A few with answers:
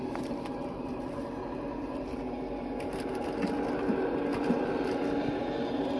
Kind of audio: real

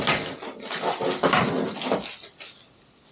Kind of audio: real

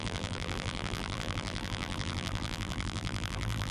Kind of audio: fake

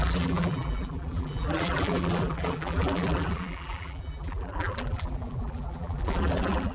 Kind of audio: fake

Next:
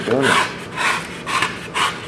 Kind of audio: real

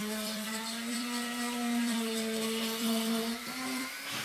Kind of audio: fake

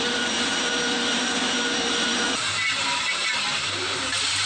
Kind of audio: fake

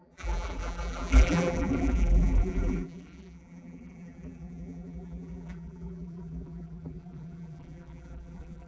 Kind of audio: fake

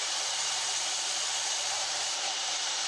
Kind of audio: fake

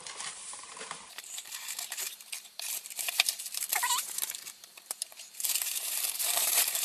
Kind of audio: fake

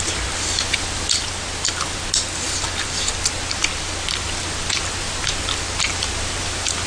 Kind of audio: real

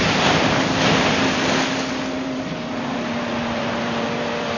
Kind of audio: fake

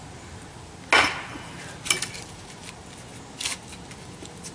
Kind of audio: real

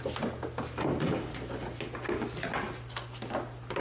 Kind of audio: real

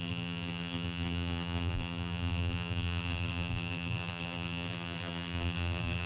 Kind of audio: fake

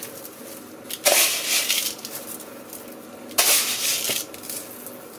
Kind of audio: real